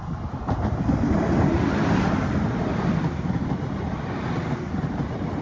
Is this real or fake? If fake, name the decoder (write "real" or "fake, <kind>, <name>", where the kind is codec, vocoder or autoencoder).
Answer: fake, vocoder, BigVGAN v2